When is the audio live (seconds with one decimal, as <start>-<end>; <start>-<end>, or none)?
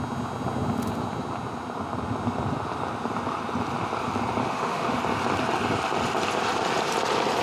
0.0-4.4; 5.0-7.4